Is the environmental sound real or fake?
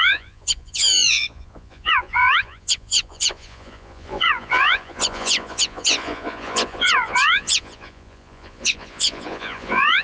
fake